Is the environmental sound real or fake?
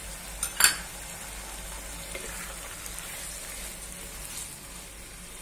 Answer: real